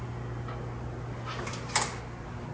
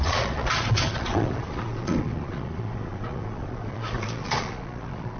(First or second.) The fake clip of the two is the second